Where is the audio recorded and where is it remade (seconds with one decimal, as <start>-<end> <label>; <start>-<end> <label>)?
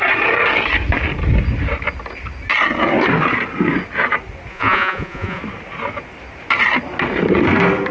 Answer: 0.0-4.5 recorded; 4.5-5.4 remade; 5.4-7.9 recorded